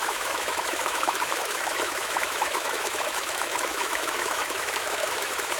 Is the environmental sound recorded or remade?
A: remade